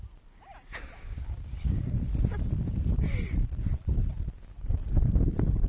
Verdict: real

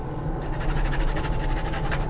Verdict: real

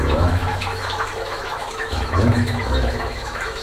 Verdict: fake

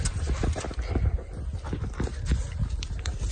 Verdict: real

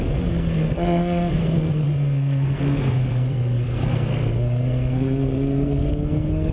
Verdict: fake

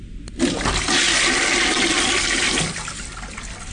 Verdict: real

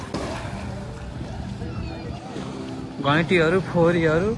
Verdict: real